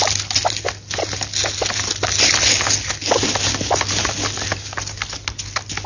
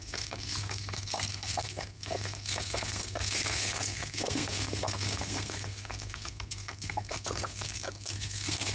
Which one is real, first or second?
first